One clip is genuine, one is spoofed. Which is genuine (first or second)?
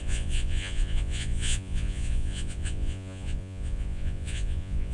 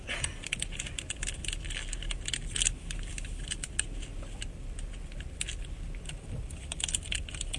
second